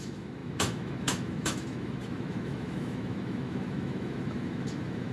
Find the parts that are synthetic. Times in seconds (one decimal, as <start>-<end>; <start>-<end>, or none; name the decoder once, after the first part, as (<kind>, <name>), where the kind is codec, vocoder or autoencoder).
0.0-5.1 (autoencoder, DAC-VAE)